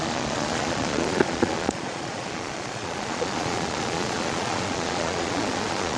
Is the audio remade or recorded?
remade